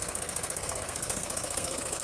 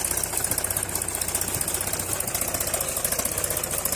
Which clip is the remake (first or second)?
first